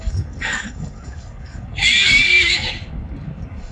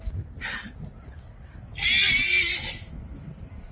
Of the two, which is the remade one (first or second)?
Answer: first